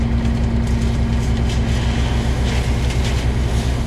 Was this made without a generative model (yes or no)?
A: yes